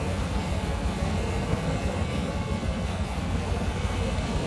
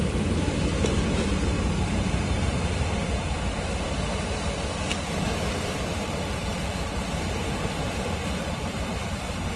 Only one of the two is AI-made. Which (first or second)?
first